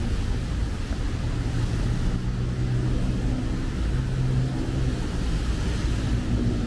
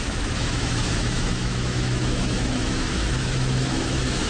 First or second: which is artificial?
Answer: second